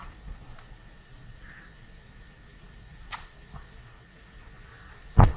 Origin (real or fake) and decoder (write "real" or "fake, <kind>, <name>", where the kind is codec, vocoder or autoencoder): fake, vocoder, Vocos